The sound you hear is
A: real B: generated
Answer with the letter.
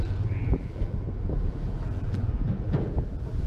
B